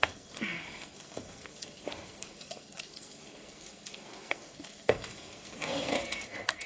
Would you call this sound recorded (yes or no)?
no